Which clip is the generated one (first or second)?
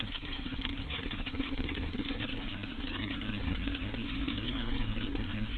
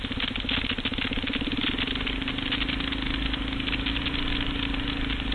first